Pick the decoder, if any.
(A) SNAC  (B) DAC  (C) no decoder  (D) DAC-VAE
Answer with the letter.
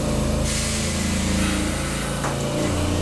C